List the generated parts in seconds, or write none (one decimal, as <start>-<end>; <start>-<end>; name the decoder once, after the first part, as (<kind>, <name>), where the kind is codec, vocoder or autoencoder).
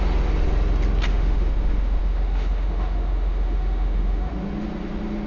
1.1-4.3 (autoencoder, DAC-VAE)